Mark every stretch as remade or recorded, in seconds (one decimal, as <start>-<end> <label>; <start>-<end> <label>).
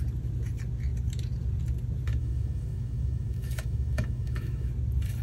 0.0-2.2 recorded; 2.2-4.7 remade; 4.7-5.2 recorded